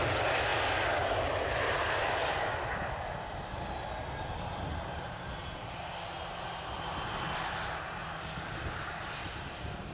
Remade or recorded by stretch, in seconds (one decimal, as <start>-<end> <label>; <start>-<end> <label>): 0.0-9.9 recorded